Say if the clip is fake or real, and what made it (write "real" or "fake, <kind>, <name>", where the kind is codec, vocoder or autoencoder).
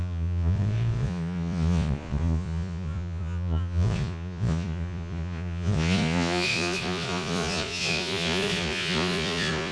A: fake, vocoder, Vocos